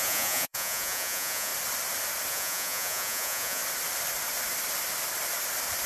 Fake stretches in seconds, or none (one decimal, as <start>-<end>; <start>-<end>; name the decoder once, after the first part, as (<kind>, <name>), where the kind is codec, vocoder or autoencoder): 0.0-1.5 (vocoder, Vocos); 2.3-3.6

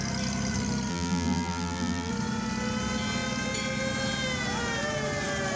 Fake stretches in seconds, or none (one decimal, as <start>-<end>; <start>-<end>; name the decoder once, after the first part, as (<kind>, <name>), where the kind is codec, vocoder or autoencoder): 0.9-2.1 (vocoder, BigVGAN v2)

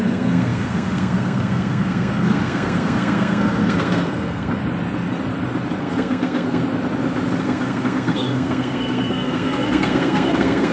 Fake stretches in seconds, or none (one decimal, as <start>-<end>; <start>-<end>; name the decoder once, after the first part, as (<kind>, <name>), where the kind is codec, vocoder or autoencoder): 0.0-4.6 (codec, SNAC); 5.8-6.6; 7.4-10.7

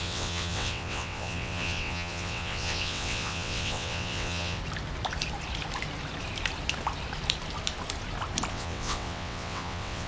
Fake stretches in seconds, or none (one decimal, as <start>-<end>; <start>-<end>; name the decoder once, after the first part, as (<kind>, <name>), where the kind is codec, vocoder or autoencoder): 0.0-4.6 (vocoder, WaveNeXt); 8.5-10.1

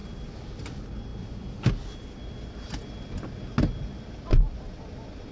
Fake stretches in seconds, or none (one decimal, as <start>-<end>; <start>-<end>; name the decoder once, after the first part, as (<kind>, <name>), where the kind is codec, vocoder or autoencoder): none

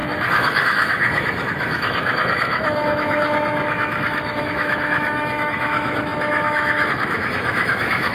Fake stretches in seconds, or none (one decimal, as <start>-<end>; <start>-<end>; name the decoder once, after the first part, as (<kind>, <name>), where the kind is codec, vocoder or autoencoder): 0.0-8.1 (autoencoder, DAC-VAE)

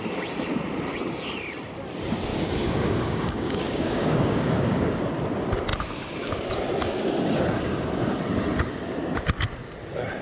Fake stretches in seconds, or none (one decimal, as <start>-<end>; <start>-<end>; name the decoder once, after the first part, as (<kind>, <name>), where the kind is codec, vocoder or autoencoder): 2.3-5.0 (codec, DAC)